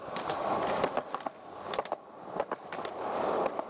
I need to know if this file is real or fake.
real